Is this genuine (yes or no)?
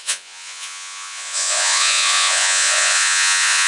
no